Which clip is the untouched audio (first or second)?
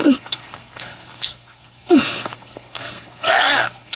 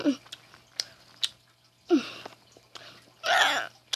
second